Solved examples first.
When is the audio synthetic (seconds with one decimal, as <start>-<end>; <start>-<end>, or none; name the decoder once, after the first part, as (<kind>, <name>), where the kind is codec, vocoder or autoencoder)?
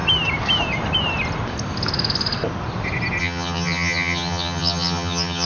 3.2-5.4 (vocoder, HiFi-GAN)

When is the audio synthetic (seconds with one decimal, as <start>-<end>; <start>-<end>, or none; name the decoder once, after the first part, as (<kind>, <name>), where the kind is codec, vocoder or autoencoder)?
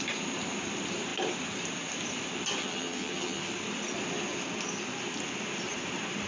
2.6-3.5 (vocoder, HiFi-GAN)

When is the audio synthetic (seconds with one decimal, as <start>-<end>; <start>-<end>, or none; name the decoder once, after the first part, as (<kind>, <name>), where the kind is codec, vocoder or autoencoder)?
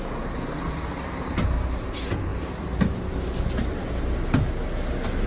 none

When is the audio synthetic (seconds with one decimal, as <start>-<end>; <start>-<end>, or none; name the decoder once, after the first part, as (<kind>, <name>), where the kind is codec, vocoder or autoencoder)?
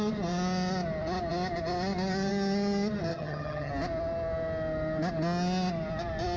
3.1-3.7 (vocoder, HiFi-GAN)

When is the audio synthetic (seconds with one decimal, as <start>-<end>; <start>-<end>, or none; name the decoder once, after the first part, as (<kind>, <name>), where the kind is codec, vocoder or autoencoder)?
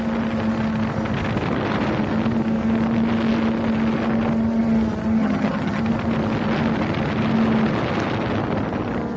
5.2-5.8 (vocoder, HiFi-GAN)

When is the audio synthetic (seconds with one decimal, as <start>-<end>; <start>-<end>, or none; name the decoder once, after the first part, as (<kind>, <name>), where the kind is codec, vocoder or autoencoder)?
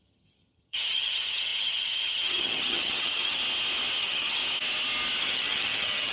0.0-3.4 (vocoder, HiFi-GAN); 4.0-4.4; 5.2-6.1